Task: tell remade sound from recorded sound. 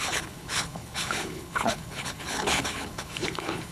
remade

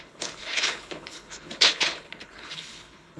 remade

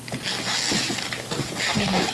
recorded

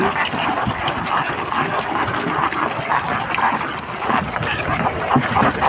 recorded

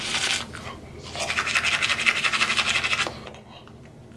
recorded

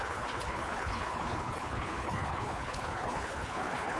remade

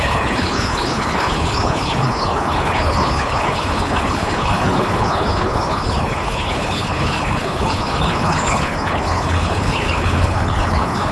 remade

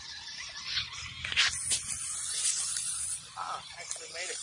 recorded